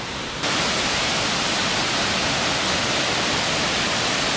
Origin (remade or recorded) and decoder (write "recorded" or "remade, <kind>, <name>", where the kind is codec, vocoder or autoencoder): recorded